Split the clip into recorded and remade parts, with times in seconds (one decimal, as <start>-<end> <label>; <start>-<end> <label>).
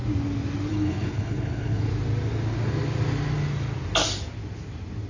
0.0-0.7 recorded; 0.7-1.9 remade; 1.9-5.1 recorded